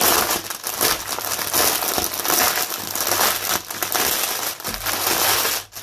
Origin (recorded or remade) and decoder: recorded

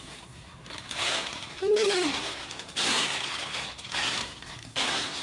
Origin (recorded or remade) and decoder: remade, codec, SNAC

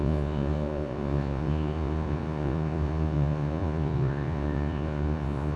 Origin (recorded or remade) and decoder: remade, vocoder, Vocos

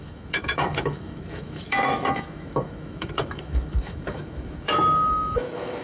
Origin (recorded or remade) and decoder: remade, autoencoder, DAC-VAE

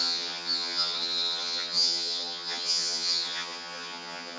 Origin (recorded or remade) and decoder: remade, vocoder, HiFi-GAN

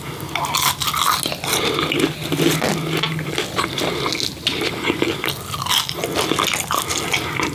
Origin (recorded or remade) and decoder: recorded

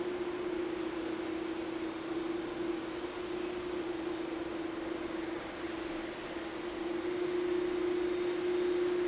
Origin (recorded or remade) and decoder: recorded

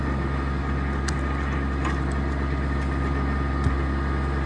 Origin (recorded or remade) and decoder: recorded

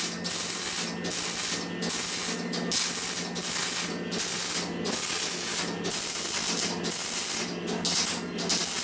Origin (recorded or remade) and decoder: recorded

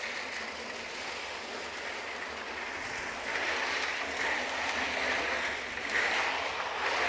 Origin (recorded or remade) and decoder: recorded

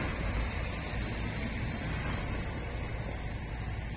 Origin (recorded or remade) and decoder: remade, vocoder, BigVGAN v2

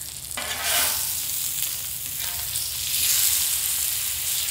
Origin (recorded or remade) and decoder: recorded